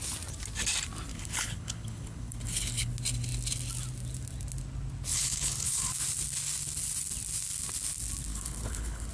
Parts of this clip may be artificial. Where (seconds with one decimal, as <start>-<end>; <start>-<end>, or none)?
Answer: 1.1-2.9; 5.1-5.9; 8.3-9.1